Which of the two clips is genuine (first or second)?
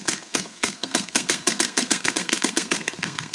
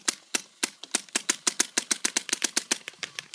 second